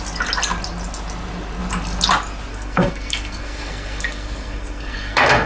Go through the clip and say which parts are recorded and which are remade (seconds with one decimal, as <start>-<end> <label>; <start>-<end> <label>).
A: 0.0-2.5 recorded; 2.5-5.5 remade